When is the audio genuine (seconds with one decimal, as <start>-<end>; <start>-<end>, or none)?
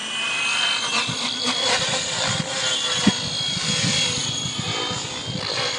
2.4-5.8